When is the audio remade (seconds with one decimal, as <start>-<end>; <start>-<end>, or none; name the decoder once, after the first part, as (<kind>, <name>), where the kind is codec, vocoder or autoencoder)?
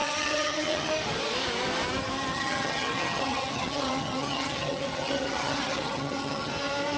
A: 0.0-0.9 (vocoder, HiFi-GAN); 2.3-6.5